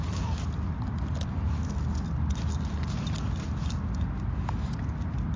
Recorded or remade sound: recorded